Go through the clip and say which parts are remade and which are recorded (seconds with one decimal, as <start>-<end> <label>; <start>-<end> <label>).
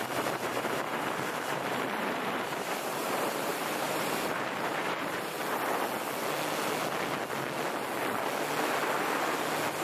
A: 0.0-5.4 remade; 5.4-9.8 recorded